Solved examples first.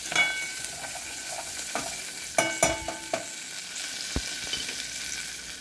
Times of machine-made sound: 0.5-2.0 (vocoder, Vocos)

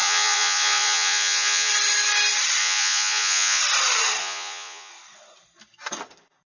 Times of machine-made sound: 0.0-1.7 (vocoder, Vocos); 2.6-3.6; 4.2-4.9